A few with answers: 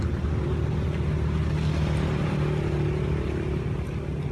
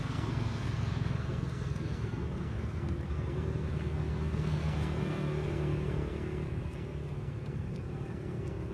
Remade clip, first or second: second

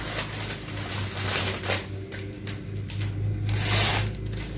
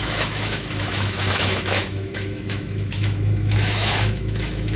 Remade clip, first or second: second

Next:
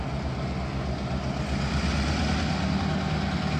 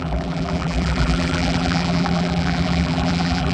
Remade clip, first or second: second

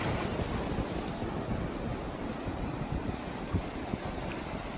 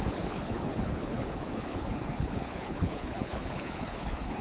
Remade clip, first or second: second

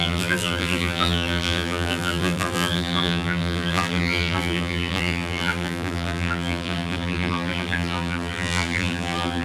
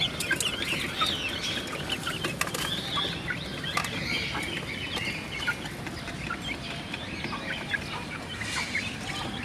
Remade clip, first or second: first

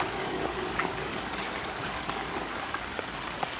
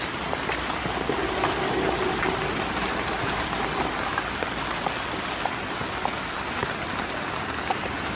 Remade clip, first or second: first